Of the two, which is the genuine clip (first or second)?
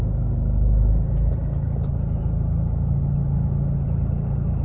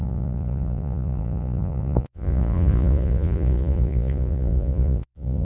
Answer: first